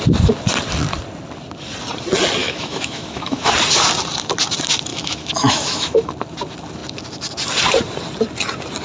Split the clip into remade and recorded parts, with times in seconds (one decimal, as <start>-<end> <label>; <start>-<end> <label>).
0.0-2.4 recorded; 2.4-3.5 remade; 3.5-4.9 recorded; 4.9-6.1 remade; 6.1-8.8 recorded